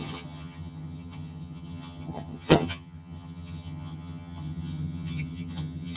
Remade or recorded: remade